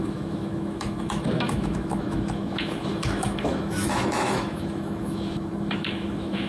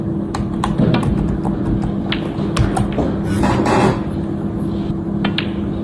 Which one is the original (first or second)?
second